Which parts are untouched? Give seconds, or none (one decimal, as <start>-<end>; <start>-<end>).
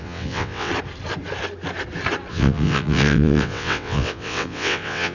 0.7-2.3